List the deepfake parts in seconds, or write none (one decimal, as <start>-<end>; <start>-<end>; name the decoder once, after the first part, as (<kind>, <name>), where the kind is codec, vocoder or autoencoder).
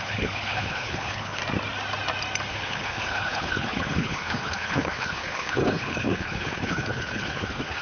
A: 0.0-1.4 (codec, HILCodec); 2.5-7.8